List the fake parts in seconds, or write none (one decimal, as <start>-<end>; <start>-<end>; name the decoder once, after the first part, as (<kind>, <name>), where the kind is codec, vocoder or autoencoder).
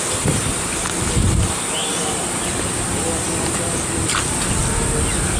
none